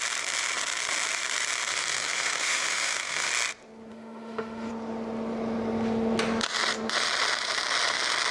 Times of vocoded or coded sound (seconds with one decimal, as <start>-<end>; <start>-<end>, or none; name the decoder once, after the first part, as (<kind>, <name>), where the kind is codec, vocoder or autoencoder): 1.7-3.3 (autoencoder, DAC-VAE); 3.9-4.7